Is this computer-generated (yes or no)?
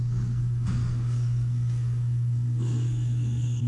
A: yes